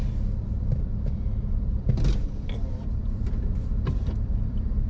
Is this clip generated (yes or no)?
yes